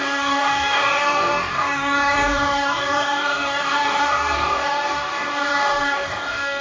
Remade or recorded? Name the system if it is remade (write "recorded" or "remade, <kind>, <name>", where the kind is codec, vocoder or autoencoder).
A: remade, codec, DAC